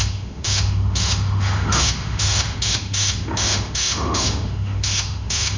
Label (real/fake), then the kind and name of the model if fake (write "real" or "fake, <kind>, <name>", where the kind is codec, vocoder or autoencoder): fake, autoencoder, DAC-VAE